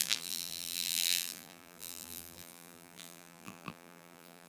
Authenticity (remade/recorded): remade